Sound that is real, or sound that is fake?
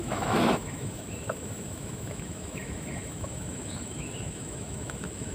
fake